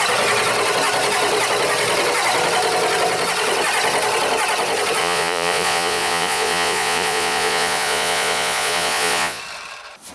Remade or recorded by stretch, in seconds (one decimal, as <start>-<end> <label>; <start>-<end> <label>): 0.0-5.0 recorded; 5.0-9.4 remade; 9.4-10.1 recorded